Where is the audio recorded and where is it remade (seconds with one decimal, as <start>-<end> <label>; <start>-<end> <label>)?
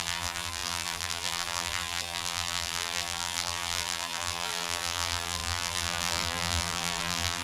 0.0-7.4 remade